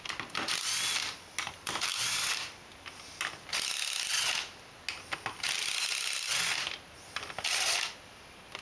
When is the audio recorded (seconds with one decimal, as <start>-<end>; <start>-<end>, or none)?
0.0-8.6